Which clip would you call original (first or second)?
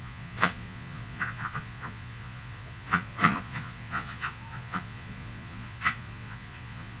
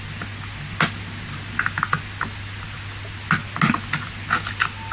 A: second